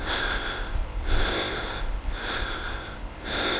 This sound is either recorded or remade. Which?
remade